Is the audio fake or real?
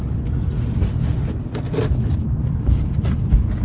real